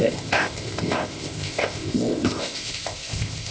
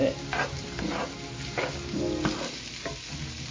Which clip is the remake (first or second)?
first